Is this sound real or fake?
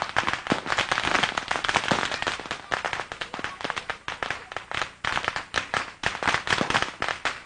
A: real